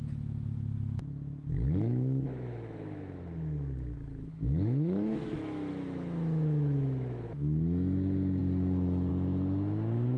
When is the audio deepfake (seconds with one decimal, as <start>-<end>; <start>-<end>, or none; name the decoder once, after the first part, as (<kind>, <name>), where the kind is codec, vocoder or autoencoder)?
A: 0.0-8.4 (autoencoder, DAC-VAE); 9.1-10.2